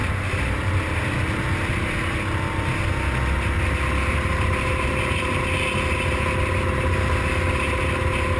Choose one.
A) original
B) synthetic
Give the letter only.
A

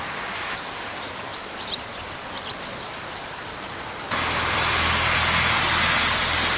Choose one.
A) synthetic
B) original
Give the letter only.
B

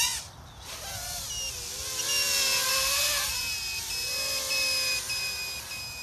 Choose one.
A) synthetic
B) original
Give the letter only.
B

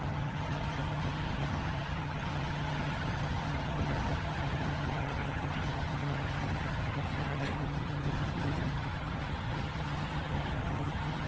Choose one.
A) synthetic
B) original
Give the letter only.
A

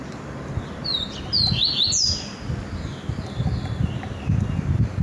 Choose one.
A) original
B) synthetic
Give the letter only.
A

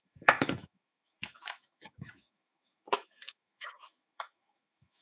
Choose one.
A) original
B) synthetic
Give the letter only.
B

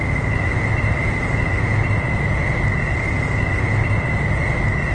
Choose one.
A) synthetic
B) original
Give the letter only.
B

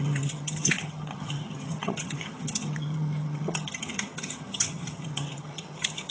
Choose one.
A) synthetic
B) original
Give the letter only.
A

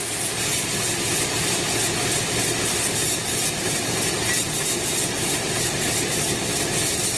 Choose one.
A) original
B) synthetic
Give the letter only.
A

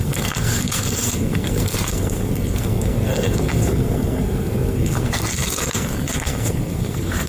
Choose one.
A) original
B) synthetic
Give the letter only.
B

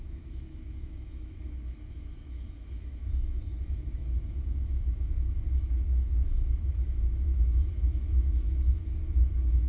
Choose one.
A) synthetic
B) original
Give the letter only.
A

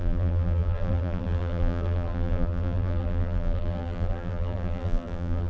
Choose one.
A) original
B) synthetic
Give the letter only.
B